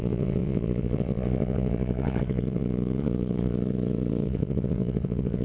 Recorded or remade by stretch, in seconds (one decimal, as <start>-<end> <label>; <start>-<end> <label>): 0.0-5.4 remade

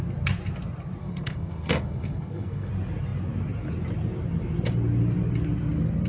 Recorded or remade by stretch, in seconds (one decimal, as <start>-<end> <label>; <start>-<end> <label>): 0.0-1.0 recorded; 1.0-2.7 remade; 2.7-6.1 recorded